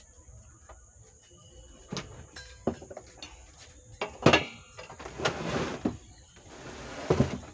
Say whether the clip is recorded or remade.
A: recorded